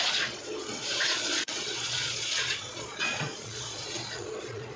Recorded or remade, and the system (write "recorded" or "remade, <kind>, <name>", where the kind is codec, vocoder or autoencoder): remade, vocoder, Vocos